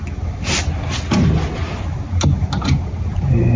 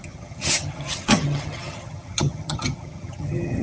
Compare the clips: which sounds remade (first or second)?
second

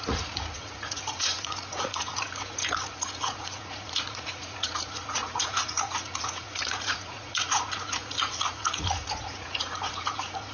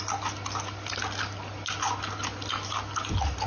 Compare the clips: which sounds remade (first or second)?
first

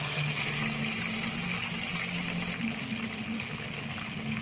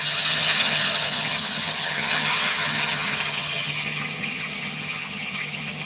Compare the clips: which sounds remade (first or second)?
second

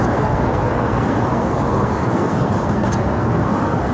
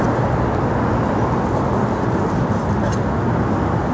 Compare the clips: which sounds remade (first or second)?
first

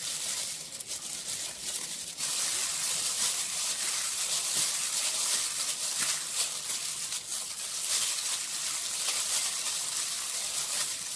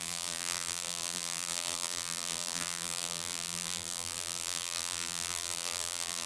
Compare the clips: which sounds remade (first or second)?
second